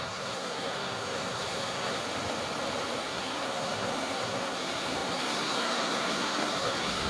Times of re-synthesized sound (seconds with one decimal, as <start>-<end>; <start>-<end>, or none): 0.0-2.0; 3.0-7.1